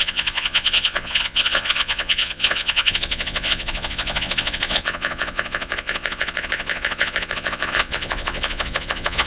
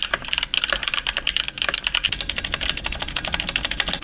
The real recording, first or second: second